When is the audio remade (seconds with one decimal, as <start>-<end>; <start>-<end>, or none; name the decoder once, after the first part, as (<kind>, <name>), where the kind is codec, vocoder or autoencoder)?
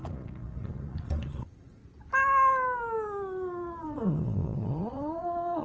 0.0-1.8 (vocoder, Vocos); 3.8-5.6